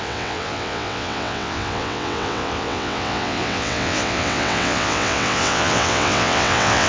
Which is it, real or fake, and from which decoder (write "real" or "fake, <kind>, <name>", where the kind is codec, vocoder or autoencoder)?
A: fake, vocoder, WaveNeXt